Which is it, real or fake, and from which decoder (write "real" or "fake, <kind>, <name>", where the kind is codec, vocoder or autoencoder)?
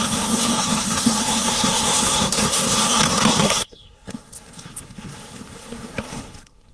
fake, codec, SNAC